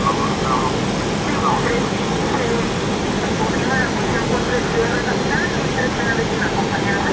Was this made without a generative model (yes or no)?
yes